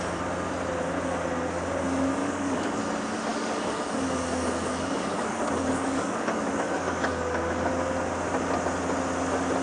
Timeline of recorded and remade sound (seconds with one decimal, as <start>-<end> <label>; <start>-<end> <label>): 0.0-2.2 recorded; 2.2-2.8 remade; 2.8-3.3 recorded; 3.3-7.7 remade; 7.7-9.6 recorded